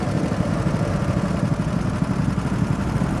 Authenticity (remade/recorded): recorded